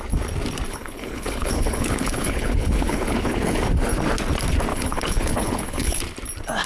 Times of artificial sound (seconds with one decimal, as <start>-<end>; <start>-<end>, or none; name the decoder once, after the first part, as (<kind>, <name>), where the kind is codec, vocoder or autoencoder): 0.7-3.6 (codec, HILCodec); 4.7-6.0